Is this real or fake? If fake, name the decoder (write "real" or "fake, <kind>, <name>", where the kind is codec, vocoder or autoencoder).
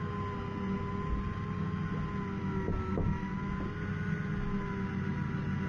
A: real